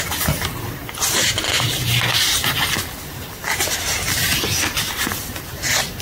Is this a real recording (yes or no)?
yes